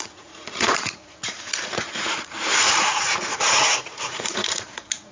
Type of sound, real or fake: fake